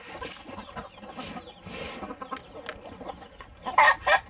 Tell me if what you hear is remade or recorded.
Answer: recorded